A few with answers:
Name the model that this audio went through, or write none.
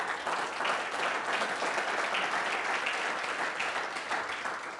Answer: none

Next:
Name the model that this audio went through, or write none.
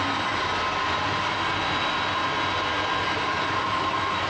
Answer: none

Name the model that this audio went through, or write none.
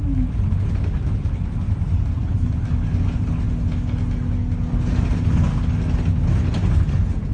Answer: none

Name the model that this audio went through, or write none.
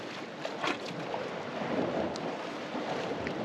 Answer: none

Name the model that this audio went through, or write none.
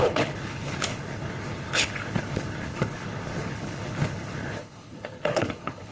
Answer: codec, HILCodec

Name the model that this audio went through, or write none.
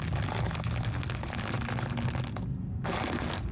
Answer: none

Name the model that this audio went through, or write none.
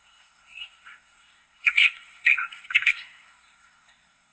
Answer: codec, SNAC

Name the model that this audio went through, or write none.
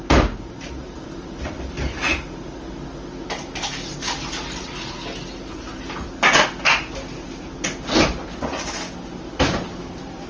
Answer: none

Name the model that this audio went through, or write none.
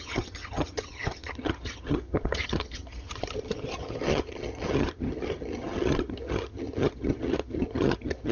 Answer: vocoder, HiFi-GAN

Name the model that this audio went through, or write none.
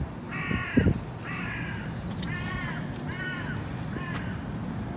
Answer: none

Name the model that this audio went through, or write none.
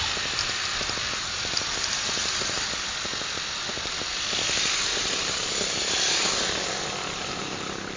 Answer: none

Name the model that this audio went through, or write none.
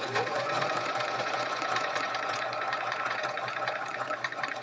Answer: vocoder, Vocos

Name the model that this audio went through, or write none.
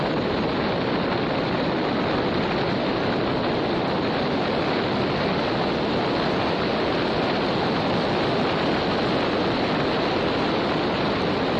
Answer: none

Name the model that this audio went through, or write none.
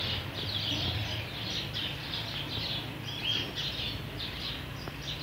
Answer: none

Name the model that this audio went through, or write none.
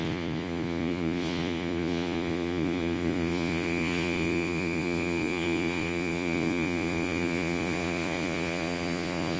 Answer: vocoder, Vocos